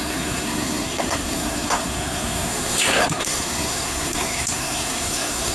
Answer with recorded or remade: remade